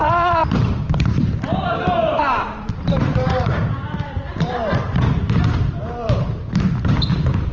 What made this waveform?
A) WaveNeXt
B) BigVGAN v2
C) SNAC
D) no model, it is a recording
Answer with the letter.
B